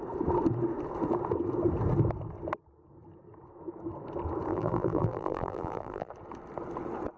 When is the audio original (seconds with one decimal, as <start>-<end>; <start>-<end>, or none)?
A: 0.0-4.5; 6.1-7.2